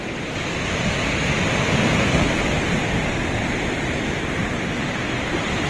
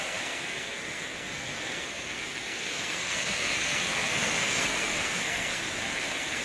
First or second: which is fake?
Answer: second